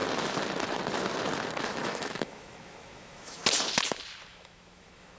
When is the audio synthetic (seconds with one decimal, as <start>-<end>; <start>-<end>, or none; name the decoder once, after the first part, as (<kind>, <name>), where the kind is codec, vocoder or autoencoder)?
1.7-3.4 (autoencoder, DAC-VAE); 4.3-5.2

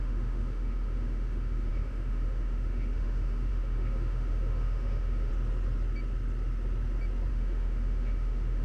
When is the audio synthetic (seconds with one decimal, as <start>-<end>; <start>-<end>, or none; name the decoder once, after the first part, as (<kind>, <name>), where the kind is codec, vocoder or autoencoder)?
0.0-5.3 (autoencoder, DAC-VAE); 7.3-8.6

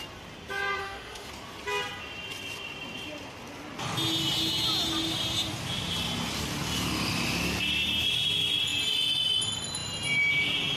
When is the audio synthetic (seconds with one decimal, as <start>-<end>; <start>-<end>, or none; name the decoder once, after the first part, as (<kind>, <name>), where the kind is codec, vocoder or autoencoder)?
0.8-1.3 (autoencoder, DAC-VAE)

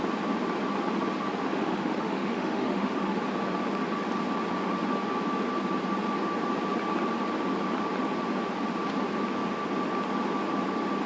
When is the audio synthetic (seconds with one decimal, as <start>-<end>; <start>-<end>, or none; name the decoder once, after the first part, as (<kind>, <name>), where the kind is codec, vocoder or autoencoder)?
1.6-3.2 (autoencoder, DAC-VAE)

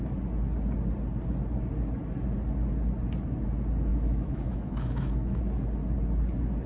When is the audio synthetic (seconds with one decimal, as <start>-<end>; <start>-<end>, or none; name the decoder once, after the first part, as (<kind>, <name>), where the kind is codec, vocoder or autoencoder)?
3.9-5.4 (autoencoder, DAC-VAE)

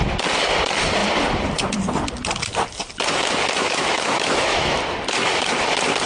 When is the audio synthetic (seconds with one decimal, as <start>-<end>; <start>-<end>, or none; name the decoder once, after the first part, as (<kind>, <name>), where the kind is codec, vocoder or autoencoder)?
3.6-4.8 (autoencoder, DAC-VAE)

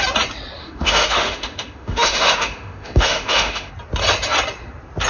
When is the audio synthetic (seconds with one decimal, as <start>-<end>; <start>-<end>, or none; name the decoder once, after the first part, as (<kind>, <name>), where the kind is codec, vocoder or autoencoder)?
0.6-3.7 (autoencoder, DAC-VAE)